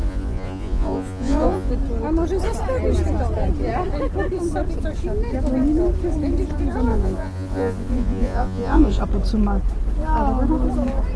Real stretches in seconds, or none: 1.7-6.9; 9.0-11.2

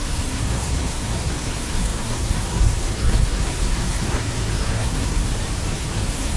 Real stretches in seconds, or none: 5.2-5.7

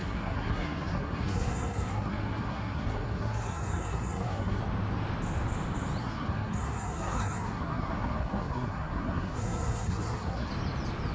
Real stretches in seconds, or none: 4.6-6.0; 10.5-11.1

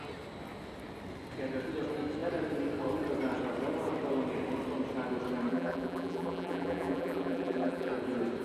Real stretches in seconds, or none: 0.0-5.5; 7.9-8.4

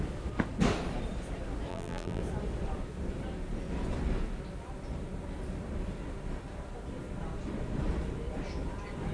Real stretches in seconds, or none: 0.0-1.7; 2.2-9.1

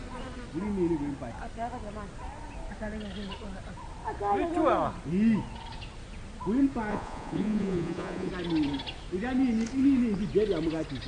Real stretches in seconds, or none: 0.0-6.9; 8.3-11.1

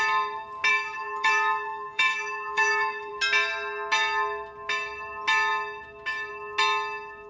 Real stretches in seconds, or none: 0.0-0.7; 3.1-7.3